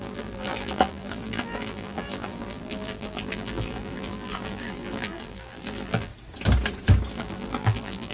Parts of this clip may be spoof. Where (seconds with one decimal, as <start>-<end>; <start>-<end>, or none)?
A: 0.0-6.1; 7.1-8.1